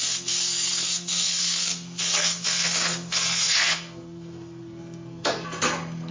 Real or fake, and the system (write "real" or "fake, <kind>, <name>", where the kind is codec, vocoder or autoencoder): fake, codec, SNAC